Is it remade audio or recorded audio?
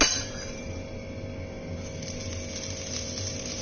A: recorded